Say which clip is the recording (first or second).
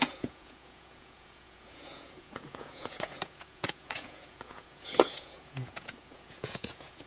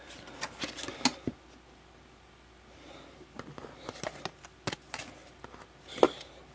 second